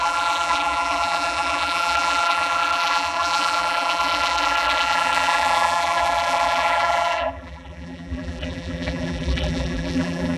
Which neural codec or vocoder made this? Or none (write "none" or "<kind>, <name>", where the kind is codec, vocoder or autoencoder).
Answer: vocoder, BigVGAN v2